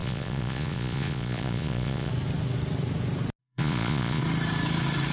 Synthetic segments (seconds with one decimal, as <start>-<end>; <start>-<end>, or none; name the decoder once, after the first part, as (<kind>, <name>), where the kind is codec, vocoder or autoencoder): 0.0-2.1 (vocoder, Vocos); 3.4-4.2